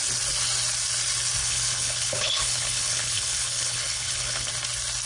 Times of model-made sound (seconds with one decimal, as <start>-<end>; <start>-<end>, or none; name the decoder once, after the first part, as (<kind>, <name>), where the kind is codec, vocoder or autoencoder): 1.4-4.5 (codec, HILCodec)